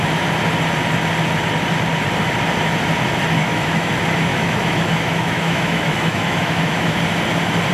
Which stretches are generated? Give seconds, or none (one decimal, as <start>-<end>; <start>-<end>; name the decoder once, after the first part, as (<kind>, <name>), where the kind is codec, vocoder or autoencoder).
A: 3.4-3.9 (autoencoder, DAC-VAE); 4.3-7.0